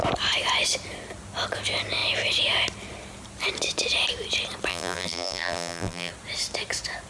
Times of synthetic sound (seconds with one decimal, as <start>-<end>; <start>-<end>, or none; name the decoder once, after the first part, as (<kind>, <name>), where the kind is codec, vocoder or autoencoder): 4.7-6.1 (vocoder, BigVGAN v2)